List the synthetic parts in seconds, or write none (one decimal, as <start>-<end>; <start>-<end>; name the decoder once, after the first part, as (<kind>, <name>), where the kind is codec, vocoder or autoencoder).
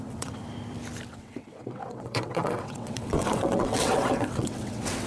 0.0-0.4 (vocoder, WaveNeXt); 1.1-5.1